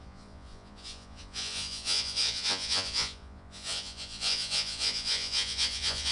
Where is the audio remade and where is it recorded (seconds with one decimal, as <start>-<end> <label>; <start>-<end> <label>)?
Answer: 0.0-6.1 remade